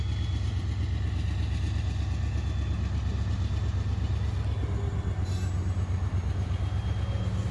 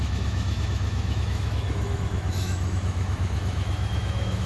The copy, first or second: second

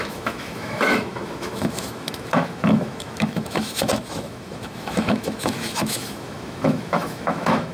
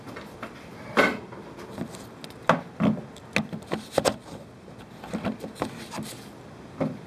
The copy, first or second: first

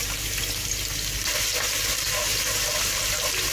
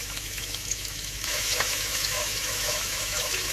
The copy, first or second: second